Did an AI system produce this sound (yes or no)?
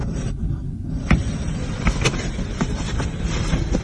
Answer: no